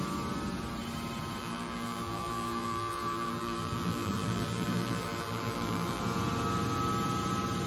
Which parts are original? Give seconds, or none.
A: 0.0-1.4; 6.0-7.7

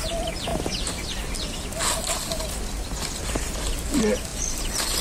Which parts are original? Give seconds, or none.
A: 0.0-4.3

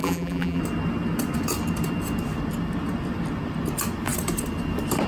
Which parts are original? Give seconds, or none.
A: 0.6-5.1

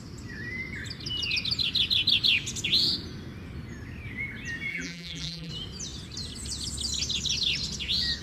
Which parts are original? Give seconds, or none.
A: 0.0-4.7; 5.5-8.2

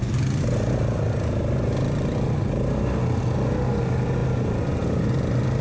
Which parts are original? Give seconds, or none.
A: 0.0-5.6

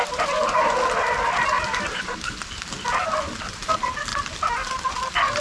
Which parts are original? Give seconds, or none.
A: 0.0-5.4